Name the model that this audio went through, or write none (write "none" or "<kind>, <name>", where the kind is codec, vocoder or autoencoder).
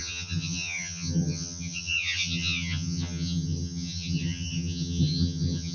vocoder, HiFi-GAN